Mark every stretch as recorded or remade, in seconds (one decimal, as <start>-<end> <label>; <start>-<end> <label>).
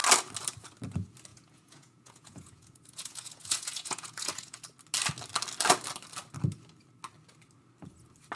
0.0-1.3 recorded; 1.3-4.6 remade; 4.6-8.4 recorded